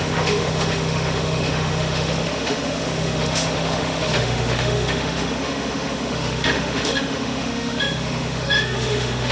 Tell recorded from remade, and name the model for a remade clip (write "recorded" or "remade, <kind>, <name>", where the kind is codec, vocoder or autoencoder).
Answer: remade, autoencoder, DAC-VAE